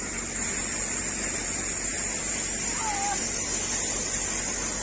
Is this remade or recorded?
recorded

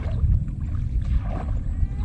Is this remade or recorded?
recorded